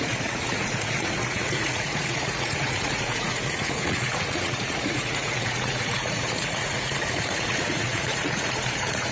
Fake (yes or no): yes